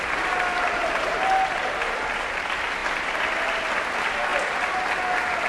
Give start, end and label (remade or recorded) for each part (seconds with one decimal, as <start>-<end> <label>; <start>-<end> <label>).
0.0-5.5 recorded